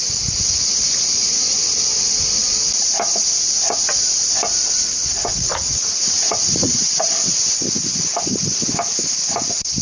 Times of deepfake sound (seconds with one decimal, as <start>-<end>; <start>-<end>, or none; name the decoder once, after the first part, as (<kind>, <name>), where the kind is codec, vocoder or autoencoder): 5.3-7.1 (vocoder, Vocos)